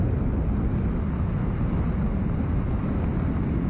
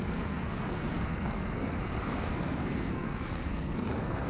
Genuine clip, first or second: first